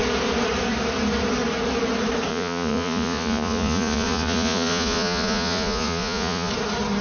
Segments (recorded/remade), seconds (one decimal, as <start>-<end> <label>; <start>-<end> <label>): 0.0-2.3 recorded; 2.3-6.5 remade; 6.5-7.0 recorded